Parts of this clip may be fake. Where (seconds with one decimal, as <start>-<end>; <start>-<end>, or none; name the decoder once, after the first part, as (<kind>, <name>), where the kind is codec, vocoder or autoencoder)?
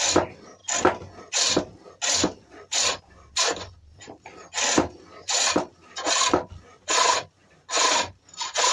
none